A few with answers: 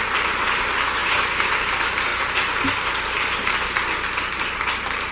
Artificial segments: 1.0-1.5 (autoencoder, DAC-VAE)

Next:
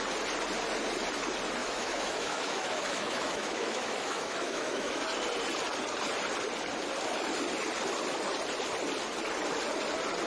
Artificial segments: 1.6-5.0 (autoencoder, DAC-VAE)

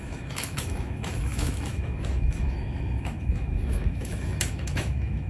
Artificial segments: 0.0-5.3 (autoencoder, DAC-VAE)

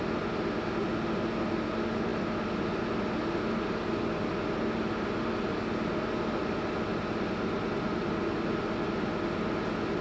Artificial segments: none

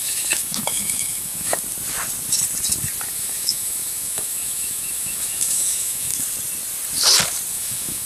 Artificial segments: 0.0-1.6 (autoencoder, DAC-VAE); 3.1-6.1; 7.5-8.1

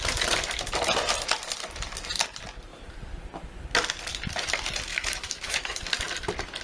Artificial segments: 4.9-5.8 (autoencoder, DAC-VAE)

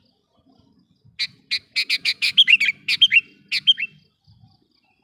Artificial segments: 2.0-2.6 (autoencoder, DAC-VAE)